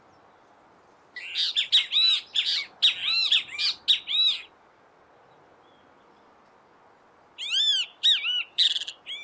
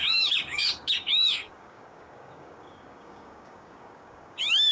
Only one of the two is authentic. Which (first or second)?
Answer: first